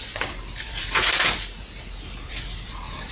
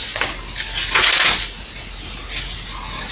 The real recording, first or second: second